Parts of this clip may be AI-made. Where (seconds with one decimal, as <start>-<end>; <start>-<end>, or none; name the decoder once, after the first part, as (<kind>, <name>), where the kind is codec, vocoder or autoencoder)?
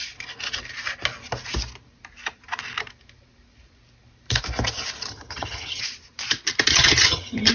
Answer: 5.1-5.8 (vocoder, HiFi-GAN); 6.7-7.5